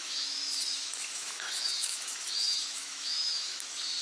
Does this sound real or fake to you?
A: fake